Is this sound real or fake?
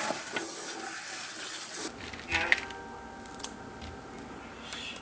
real